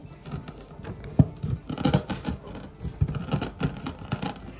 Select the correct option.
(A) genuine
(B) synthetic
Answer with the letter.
A